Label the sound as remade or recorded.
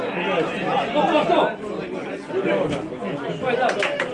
recorded